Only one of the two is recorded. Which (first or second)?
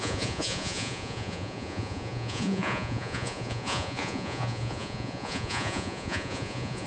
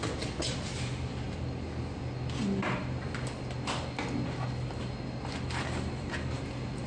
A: second